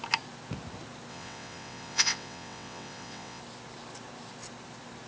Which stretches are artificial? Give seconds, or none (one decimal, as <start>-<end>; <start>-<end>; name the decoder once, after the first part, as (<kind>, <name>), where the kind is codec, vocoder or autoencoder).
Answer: 1.1-3.4 (vocoder, WaveNeXt)